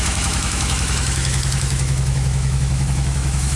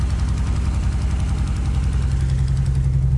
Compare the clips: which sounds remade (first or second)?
first